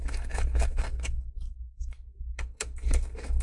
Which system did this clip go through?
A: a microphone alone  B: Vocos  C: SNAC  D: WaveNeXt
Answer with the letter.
C